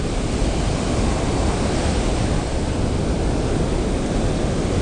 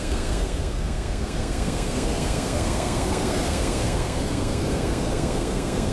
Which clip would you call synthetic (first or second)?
second